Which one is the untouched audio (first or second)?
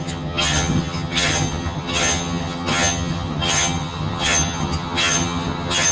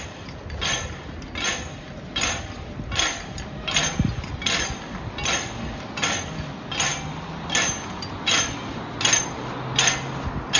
second